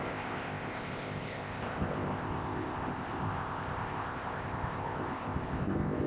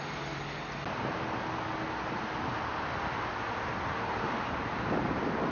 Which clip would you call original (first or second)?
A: second